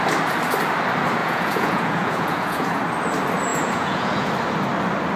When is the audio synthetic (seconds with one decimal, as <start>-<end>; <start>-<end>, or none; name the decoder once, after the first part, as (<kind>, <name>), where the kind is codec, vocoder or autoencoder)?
1.2-2.8 (vocoder, Vocos); 3.5-4.3

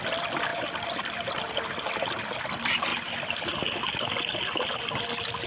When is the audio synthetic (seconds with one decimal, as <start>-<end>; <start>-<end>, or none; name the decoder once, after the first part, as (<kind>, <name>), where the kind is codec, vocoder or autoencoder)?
0.5-1.1 (vocoder, BigVGAN v2); 2.9-3.6

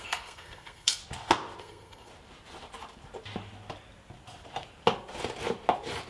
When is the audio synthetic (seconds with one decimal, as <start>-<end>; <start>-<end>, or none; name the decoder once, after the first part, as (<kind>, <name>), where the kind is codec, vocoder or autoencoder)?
0.0-1.0 (codec, SNAC); 1.6-2.1

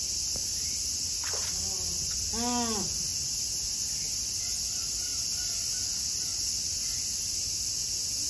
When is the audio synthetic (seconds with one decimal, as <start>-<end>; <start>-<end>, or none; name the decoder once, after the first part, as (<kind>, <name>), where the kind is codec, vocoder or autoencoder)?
none